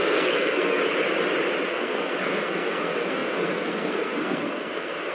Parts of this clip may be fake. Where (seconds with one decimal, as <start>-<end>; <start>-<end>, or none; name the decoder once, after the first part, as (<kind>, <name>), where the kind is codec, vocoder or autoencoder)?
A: 0.0-0.8 (codec, SNAC); 1.7-5.1